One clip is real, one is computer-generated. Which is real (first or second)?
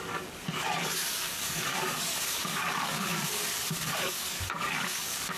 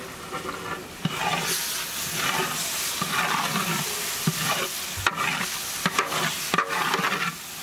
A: second